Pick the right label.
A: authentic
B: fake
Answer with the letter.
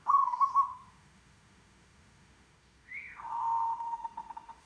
B